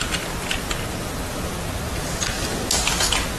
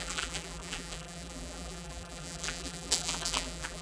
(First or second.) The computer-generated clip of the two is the second